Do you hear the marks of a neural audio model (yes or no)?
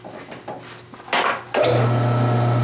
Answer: no